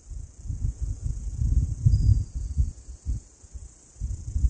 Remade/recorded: recorded